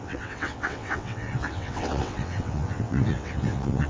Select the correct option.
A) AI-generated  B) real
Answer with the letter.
A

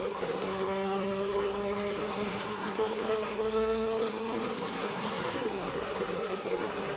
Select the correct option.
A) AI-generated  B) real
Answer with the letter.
A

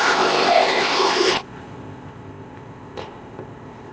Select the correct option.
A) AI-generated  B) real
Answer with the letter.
A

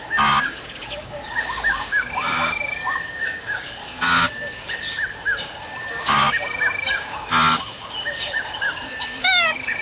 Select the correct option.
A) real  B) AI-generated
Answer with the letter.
B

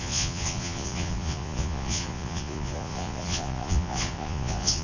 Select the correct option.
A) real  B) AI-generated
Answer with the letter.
B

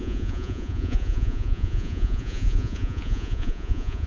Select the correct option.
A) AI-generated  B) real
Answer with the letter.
A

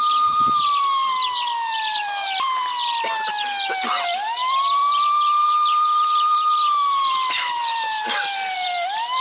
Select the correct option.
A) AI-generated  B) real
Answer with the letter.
A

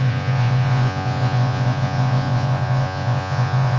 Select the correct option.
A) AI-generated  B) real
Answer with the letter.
A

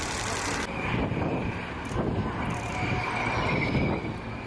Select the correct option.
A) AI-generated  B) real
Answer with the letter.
B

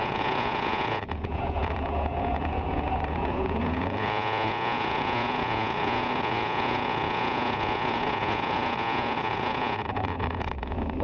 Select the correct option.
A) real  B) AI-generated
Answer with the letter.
B